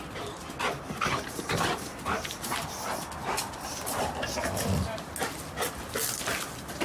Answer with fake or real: real